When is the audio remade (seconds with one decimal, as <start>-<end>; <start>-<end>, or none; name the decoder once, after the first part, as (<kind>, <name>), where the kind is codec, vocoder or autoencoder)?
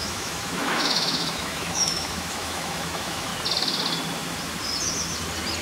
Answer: 0.0-3.3 (autoencoder, DAC-VAE)